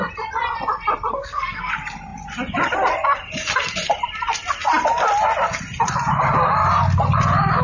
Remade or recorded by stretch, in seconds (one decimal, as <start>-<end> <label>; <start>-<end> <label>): 0.0-1.1 recorded; 1.1-1.7 remade; 1.7-7.6 recorded